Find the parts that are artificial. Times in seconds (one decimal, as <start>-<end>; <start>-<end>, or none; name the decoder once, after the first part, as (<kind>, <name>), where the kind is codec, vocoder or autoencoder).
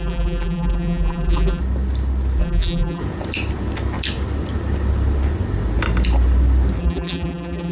0.0-1.6 (vocoder, BigVGAN v2); 2.4-3.0; 6.8-7.7